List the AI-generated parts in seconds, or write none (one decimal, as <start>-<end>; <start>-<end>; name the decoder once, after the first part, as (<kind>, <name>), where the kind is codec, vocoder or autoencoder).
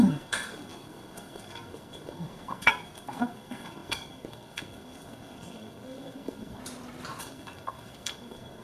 0.0-6.6 (codec, SNAC); 7.2-8.6